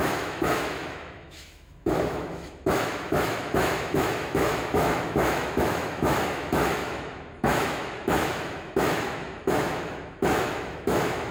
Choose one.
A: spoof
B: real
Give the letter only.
A